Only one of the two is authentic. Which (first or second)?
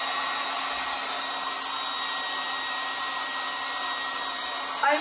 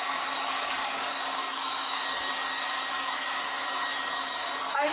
first